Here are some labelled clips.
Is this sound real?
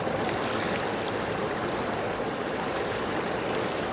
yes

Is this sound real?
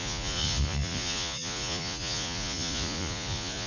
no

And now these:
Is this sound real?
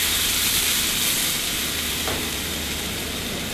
no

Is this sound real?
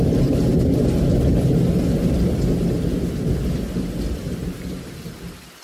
yes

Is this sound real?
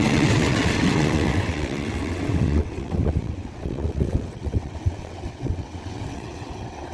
no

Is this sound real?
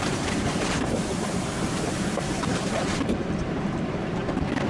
no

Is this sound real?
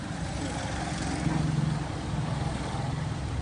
yes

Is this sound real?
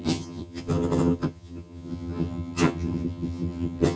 no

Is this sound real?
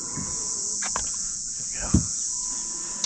no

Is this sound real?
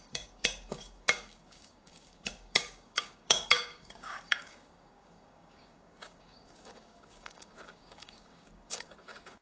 no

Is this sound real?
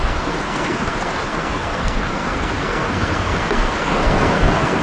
no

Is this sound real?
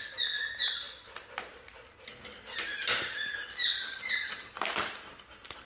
yes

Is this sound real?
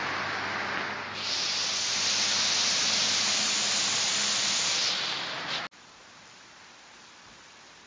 yes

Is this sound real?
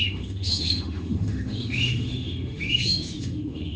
no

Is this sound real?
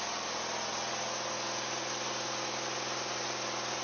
yes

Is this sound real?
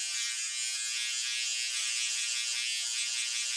yes